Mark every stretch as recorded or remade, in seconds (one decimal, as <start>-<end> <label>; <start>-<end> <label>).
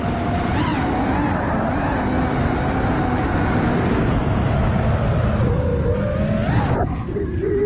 0.0-7.7 recorded